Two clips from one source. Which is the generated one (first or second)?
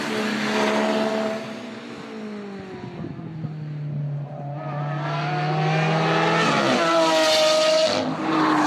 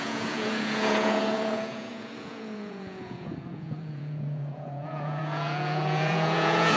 second